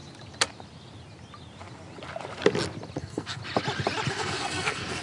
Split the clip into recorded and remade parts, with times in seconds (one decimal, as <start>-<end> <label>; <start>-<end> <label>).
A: 0.0-3.0 recorded; 3.0-3.4 remade; 3.4-4.1 recorded; 4.1-5.0 remade